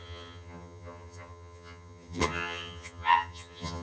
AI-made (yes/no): yes